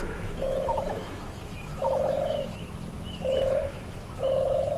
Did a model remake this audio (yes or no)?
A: yes